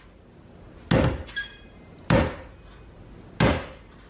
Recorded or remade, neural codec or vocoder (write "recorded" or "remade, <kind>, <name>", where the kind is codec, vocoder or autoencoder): recorded